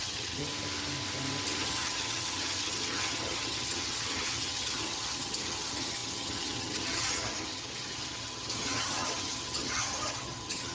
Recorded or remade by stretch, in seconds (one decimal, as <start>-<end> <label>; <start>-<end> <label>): 0.0-0.5 remade; 0.5-1.6 recorded; 1.6-10.7 remade